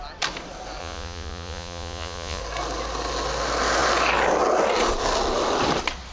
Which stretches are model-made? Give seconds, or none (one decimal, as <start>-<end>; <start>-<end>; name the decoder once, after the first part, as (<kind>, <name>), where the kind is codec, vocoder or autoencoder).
0.8-2.4 (vocoder, Vocos)